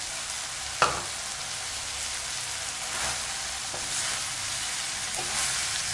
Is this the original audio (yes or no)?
yes